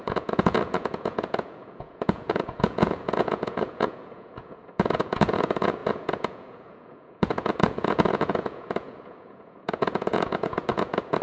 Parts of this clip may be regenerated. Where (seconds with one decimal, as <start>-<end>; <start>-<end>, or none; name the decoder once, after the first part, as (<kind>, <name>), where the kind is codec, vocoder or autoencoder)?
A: 0.0-11.2 (vocoder, Vocos)